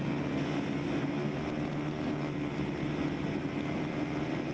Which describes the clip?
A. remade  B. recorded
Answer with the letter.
B